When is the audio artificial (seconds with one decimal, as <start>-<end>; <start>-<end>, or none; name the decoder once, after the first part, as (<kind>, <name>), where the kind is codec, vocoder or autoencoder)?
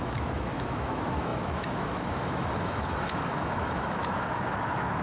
0.0-5.0 (autoencoder, DAC-VAE)